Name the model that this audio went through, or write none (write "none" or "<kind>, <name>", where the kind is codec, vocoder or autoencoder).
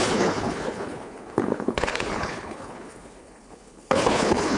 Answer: codec, HILCodec